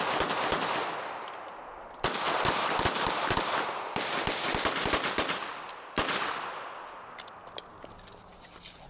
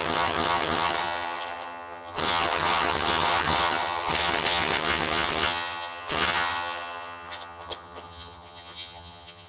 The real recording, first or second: first